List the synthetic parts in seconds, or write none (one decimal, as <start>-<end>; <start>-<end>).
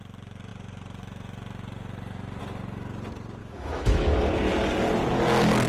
3.4-4.2